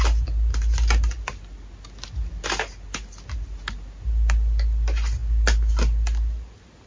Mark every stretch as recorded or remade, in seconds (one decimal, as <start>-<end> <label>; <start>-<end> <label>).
0.0-6.9 recorded